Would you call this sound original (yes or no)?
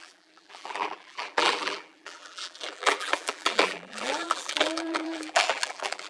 no